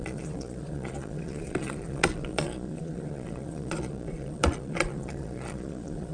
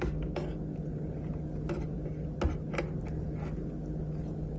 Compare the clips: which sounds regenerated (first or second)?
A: first